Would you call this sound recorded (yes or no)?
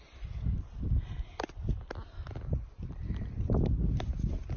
yes